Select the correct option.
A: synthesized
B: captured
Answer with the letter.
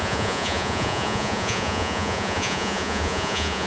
A